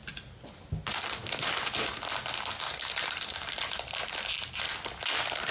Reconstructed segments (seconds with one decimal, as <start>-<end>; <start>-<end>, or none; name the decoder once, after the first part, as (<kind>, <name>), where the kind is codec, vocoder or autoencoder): none